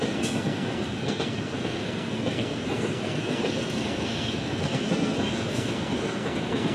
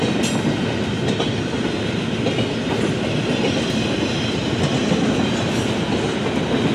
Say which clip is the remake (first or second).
first